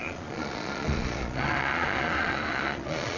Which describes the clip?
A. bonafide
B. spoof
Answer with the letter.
B